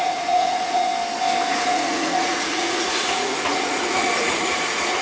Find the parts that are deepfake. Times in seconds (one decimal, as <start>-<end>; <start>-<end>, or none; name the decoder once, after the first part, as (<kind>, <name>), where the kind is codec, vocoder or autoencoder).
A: 0.0-0.9 (vocoder, Vocos); 1.5-5.0

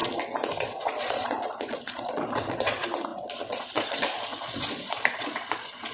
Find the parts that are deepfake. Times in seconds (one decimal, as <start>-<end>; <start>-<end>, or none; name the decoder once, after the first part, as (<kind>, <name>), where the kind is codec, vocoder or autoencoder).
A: 0.0-5.9 (vocoder, Vocos)

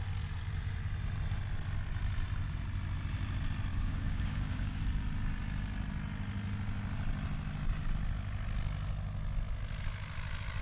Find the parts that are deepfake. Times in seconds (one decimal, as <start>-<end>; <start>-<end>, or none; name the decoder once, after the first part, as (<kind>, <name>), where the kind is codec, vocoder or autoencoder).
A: 3.7-4.8 (codec, DAC)

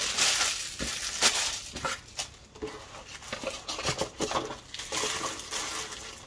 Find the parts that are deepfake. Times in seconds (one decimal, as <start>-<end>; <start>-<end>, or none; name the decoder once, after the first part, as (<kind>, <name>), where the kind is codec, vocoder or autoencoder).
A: none

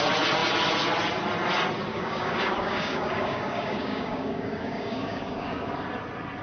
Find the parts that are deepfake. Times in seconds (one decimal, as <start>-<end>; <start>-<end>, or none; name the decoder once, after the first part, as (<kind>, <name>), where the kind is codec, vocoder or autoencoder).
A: 1.9-5.7 (codec, DAC)

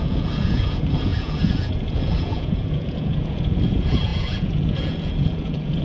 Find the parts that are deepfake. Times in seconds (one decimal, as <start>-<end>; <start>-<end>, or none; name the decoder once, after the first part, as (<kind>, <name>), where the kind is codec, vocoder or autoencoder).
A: 0.0-5.8 (vocoder, Vocos)